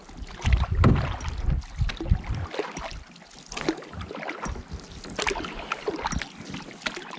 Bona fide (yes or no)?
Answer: yes